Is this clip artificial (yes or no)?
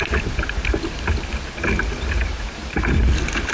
no